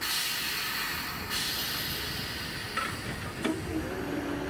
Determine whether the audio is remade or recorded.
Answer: recorded